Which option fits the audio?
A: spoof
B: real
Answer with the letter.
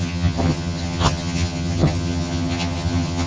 A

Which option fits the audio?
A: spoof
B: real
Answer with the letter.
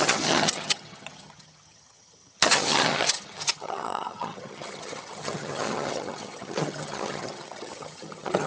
A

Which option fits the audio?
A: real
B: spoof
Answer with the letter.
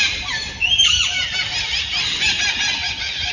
A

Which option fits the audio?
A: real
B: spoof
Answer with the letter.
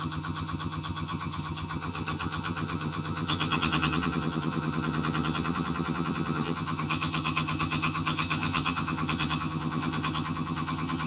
B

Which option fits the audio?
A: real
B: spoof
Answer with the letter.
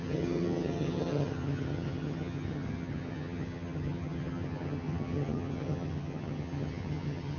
B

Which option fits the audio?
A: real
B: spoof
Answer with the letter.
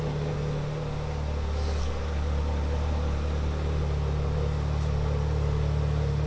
A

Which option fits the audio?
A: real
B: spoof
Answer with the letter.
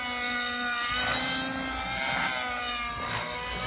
A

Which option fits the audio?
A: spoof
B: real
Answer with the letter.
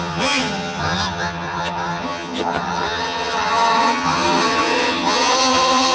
A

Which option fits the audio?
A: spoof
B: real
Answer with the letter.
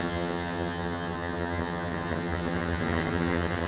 A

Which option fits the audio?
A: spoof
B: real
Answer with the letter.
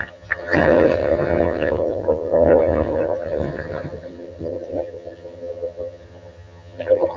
A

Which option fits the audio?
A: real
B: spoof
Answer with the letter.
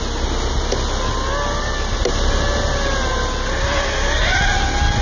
A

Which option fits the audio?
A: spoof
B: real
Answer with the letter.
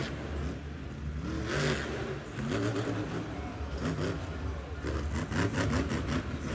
B